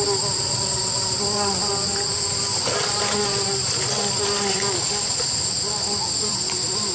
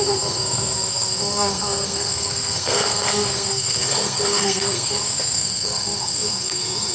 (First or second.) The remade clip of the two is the second